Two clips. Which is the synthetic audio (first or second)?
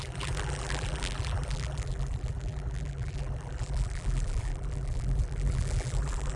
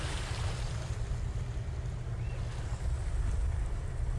first